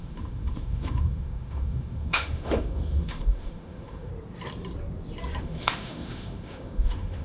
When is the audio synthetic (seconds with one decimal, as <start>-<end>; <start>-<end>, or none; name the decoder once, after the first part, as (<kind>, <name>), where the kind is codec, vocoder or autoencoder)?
0.0-4.1 (autoencoder, DAC-VAE); 5.4-7.2